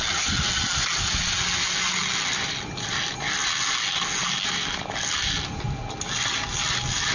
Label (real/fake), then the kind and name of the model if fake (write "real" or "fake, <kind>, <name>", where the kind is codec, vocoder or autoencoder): real